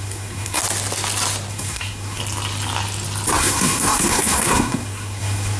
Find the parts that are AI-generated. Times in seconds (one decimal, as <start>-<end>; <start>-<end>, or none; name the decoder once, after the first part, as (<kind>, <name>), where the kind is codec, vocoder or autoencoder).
0.0-0.6 (codec, SNAC); 1.5-2.2; 3.4-5.6